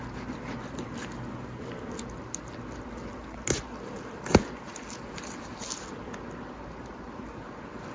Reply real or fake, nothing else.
real